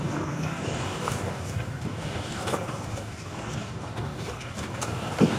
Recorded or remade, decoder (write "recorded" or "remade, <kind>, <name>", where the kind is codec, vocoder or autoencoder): remade, codec, DAC